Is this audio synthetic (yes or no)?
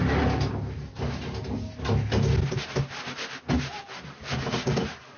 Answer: no